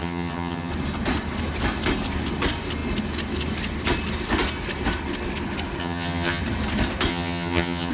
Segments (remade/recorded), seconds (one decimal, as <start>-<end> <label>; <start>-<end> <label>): 0.0-0.7 remade; 0.7-5.8 recorded; 5.8-6.4 remade; 6.4-7.1 recorded; 7.1-7.9 remade